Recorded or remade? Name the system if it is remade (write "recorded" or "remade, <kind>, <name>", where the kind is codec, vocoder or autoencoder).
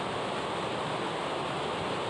recorded